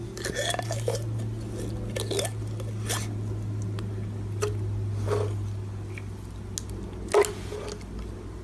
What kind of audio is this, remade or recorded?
recorded